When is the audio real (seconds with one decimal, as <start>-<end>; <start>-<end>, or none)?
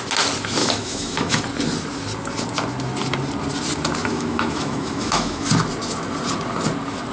0.0-0.6; 1.4-4.0; 5.5-7.1